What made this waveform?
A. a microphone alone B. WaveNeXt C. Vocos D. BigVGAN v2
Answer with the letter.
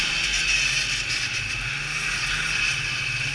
A